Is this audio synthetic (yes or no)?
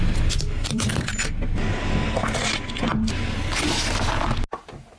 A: no